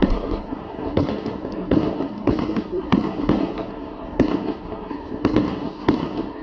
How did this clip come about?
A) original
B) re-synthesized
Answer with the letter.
B